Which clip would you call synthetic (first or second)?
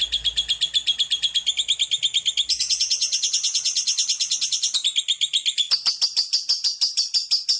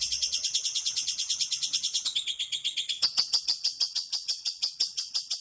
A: second